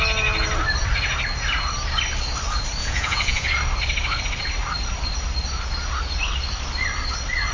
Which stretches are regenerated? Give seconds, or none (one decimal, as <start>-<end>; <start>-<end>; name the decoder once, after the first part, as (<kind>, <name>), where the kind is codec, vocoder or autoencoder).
2.8-3.5 (vocoder, Vocos)